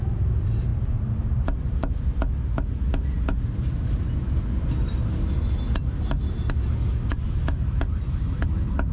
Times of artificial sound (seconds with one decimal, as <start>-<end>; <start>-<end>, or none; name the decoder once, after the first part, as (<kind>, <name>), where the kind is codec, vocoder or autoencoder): none